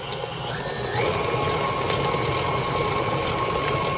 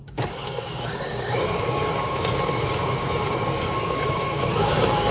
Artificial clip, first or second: second